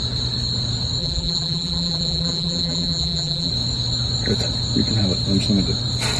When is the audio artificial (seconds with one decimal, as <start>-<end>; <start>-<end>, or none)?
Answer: 1.0-3.5